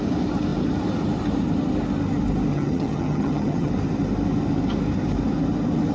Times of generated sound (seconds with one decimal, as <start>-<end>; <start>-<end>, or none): 2.5-3.7